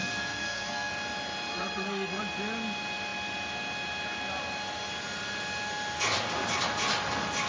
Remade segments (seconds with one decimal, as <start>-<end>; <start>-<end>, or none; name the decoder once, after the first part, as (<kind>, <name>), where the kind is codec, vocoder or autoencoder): 0.0-0.9 (codec, SNAC); 1.5-2.2